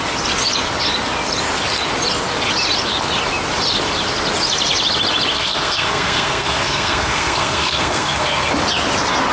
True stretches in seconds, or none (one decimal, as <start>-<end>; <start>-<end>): 0.0-5.3; 8.5-9.3